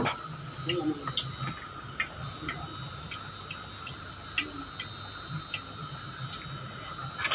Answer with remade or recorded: recorded